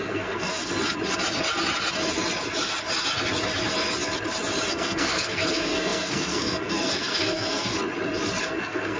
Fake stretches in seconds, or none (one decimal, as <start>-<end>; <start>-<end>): 0.0-0.6; 4.7-7.7; 8.4-9.0